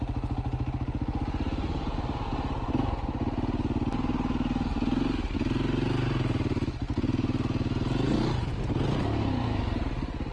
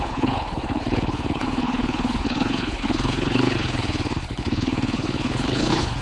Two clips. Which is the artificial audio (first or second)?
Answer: second